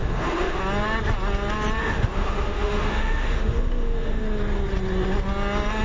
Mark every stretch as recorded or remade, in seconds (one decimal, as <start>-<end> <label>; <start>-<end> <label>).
0.0-0.6 remade; 0.6-1.8 recorded; 1.8-4.2 remade; 4.2-5.8 recorded